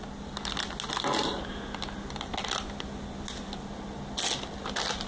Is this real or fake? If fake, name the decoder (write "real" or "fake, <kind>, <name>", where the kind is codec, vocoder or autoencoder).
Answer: real